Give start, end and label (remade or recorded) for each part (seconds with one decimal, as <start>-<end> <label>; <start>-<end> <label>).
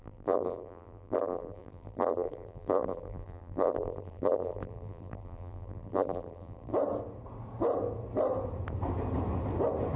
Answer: 0.0-6.7 remade; 6.7-10.0 recorded